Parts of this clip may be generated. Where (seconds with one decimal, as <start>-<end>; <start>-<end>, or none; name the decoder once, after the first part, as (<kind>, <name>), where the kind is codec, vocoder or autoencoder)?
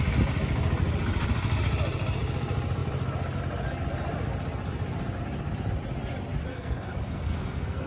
6.5-7.9 (codec, SNAC)